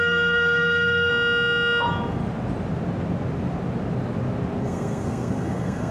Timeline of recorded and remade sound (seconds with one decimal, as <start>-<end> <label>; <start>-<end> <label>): 0.0-1.1 remade; 1.1-4.6 recorded; 4.6-5.9 remade